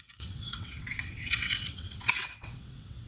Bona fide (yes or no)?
no